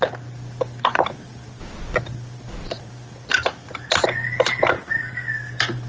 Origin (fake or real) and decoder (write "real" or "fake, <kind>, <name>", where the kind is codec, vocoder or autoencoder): real